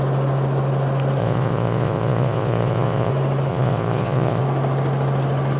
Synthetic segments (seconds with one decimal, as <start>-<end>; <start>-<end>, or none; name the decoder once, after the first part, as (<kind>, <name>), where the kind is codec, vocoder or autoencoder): 1.2-3.1 (vocoder, Vocos); 3.5-4.4